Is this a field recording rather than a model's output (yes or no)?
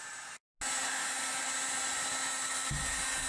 yes